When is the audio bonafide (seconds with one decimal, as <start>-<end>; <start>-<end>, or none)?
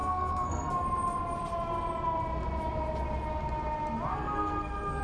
0.7-4.1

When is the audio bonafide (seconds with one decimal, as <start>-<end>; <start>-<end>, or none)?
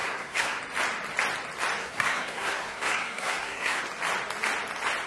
0.6-1.8; 3.8-5.1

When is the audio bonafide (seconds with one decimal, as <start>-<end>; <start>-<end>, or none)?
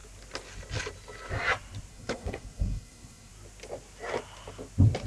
0.0-1.9; 3.3-5.1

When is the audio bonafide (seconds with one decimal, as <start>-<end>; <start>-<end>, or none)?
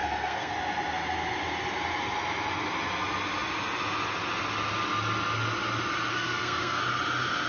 0.5-6.1; 6.8-7.5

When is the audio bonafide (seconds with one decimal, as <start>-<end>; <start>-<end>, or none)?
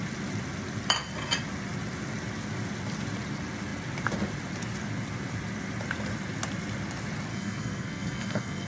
0.0-7.3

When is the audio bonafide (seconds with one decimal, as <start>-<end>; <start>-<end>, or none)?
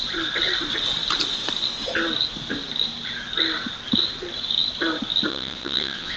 0.0-5.3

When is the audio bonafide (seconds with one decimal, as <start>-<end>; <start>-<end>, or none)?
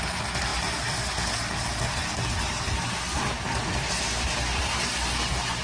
0.0-5.6